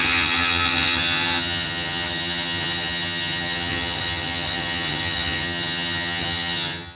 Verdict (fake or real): fake